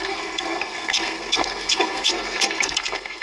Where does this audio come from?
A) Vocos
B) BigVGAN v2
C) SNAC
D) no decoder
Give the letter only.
C